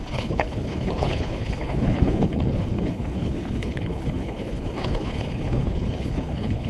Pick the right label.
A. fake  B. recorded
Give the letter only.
A